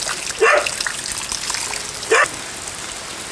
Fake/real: real